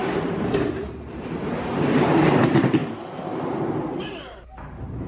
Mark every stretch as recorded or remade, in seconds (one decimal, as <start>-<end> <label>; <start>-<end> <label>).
0.0-5.1 remade